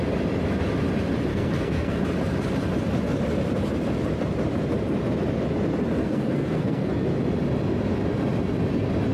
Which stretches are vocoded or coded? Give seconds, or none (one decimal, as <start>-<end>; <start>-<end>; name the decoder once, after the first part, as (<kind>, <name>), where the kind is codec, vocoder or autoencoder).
1.3-2.0 (codec, SNAC); 6.0-6.9